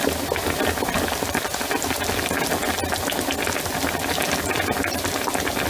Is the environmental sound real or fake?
real